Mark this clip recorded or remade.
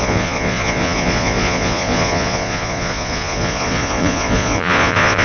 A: remade